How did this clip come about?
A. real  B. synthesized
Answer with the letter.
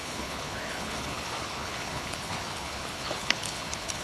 B